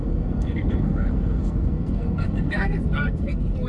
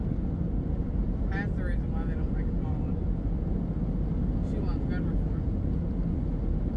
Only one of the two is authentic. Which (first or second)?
second